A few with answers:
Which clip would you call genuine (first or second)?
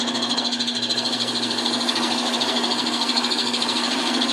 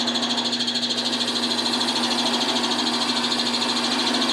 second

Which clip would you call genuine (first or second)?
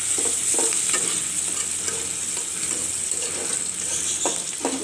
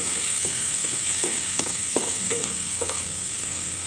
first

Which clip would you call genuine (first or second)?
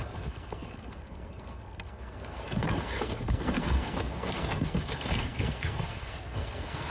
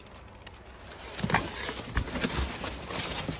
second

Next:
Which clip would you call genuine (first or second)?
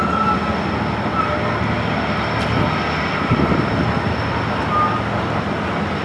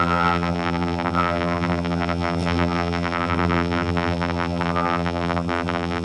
first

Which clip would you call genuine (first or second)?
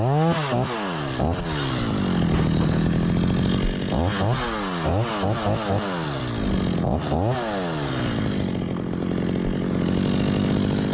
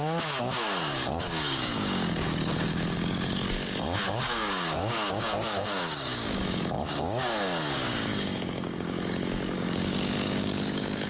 first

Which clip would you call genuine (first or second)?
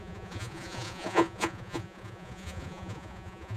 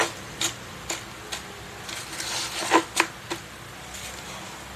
second